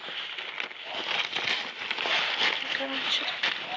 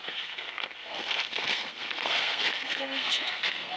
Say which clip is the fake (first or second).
second